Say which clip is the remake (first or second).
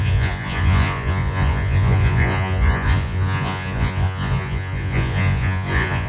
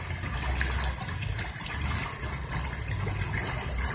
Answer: first